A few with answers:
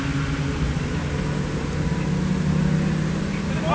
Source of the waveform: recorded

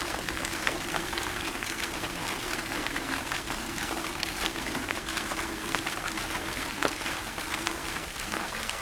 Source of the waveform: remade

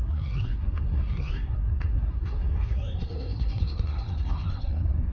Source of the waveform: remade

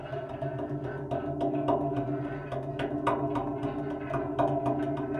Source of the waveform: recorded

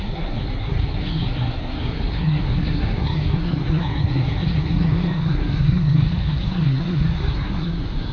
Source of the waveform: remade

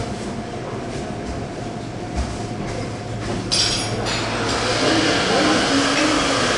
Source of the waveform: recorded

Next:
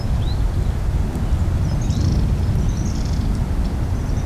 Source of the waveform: recorded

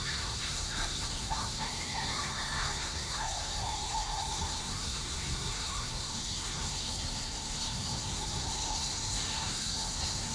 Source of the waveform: remade